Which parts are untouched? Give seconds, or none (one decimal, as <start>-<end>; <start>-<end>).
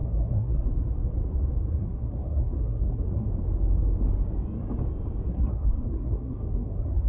0.7-1.7; 3.3-5.3